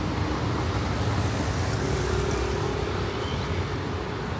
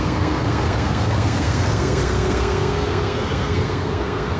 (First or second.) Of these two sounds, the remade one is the second